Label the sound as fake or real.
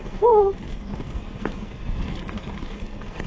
fake